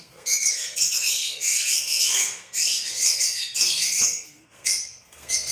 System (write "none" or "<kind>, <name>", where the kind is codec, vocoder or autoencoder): codec, SNAC